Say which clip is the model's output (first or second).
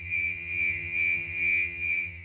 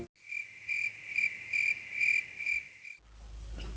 first